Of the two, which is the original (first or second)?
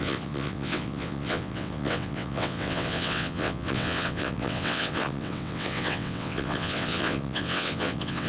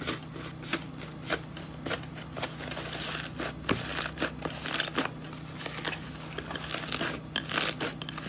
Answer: second